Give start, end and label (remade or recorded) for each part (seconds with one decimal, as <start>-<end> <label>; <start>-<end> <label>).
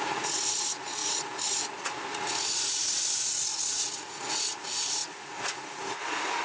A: 0.0-6.4 remade